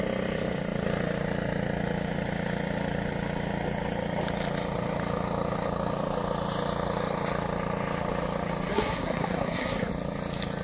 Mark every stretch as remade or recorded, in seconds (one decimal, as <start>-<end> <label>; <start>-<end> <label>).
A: 0.0-8.7 recorded; 8.7-9.9 remade; 9.9-10.6 recorded